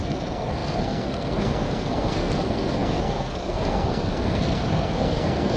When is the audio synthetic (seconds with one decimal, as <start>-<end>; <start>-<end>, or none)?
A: 0.0-5.6